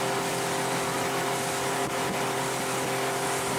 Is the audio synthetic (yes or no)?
no